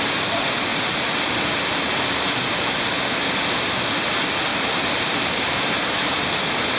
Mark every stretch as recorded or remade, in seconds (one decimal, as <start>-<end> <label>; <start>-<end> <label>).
0.0-4.5 recorded; 4.5-5.8 remade; 5.8-6.8 recorded